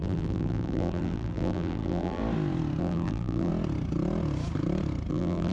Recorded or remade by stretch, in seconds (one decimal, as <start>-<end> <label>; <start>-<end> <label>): 0.0-2.2 remade; 2.2-2.8 recorded; 2.8-3.5 remade; 3.5-5.1 recorded; 5.1-5.5 remade